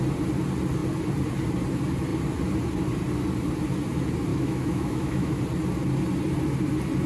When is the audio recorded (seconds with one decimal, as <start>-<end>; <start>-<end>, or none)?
0.0-4.3; 5.4-7.1